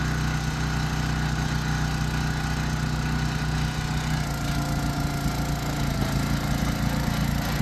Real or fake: real